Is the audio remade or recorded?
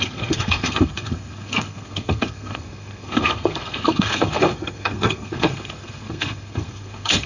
remade